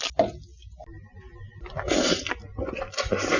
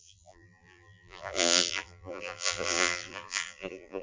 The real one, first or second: first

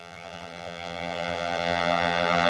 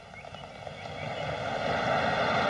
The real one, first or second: second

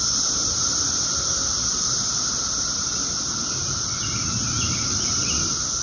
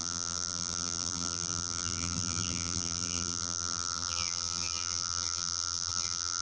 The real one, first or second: first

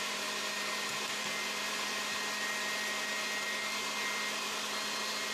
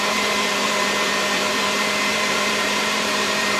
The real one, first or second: first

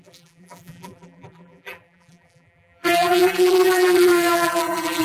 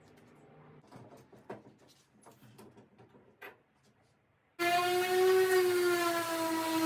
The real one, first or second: second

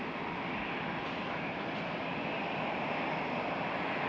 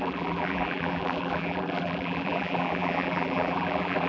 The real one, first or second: first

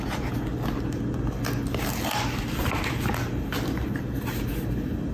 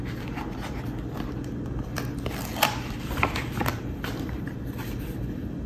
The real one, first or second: first